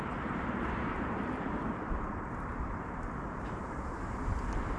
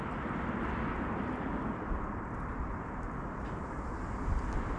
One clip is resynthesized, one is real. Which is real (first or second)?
second